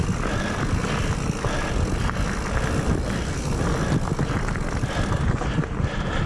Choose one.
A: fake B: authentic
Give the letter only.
B